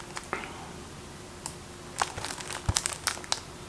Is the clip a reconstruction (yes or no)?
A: no